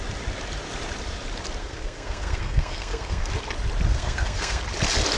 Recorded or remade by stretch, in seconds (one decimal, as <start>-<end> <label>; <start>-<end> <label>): 0.0-1.6 recorded; 1.6-3.3 remade; 3.3-3.9 recorded; 3.9-4.6 remade; 4.6-5.2 recorded